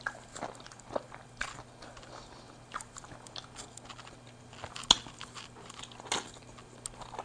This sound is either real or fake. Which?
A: real